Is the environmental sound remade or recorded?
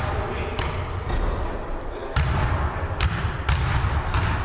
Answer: recorded